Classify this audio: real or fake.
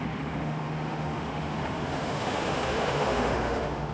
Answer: fake